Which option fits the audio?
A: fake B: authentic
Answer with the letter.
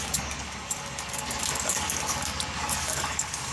A